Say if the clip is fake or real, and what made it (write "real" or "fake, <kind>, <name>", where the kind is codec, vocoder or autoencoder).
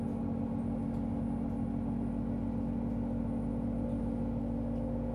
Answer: real